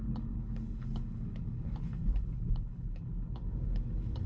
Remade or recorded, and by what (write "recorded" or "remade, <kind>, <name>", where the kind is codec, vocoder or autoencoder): remade, codec, HILCodec